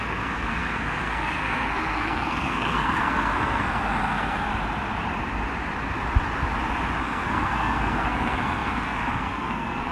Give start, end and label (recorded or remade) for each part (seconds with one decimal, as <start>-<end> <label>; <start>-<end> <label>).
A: 0.0-4.5 remade; 4.5-7.0 recorded; 7.0-9.9 remade